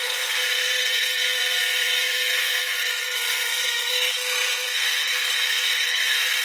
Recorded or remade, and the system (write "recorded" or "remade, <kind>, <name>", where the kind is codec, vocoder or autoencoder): remade, codec, SNAC